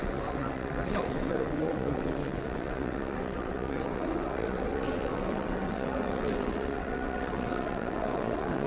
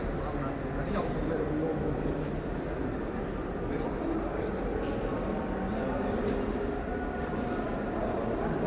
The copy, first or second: first